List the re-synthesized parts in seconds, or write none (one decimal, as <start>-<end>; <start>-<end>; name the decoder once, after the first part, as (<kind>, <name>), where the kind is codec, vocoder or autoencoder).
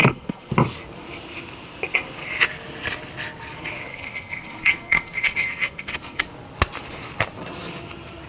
0.0-0.5 (codec, SNAC); 3.9-6.2